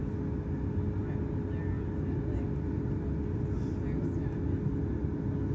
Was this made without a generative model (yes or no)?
yes